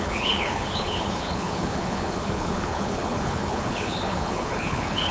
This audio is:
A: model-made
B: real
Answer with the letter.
A